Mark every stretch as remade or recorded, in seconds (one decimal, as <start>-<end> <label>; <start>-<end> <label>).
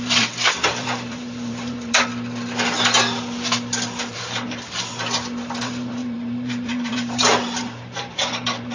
0.0-2.1 remade; 2.1-5.6 recorded; 5.6-8.7 remade